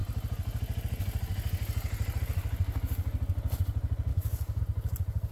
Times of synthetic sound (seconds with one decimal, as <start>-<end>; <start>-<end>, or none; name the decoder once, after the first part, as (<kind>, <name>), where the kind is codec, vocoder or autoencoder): 4.1-4.6 (codec, DAC)